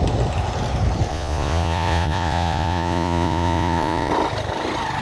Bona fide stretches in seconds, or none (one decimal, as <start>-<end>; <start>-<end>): 0.0-1.1; 4.1-5.0

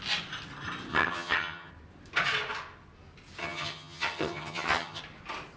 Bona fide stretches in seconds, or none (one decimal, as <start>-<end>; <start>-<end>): 0.0-0.9; 1.7-3.4; 5.0-5.6

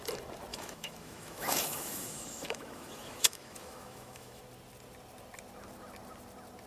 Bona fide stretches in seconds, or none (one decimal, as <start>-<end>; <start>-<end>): 0.0-0.5; 4.4-6.7

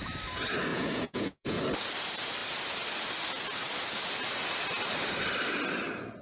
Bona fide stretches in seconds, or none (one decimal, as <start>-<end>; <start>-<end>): 0.0-0.7; 1.6-6.2

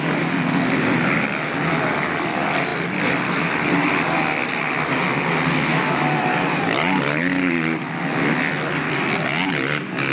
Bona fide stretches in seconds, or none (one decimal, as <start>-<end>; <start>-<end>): 0.0-10.1

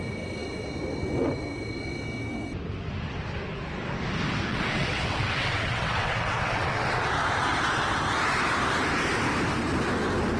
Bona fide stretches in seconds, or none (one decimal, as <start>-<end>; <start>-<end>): 0.0-4.5; 7.1-10.4